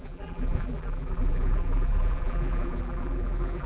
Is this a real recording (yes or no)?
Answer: no